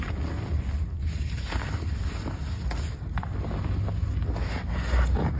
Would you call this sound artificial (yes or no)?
no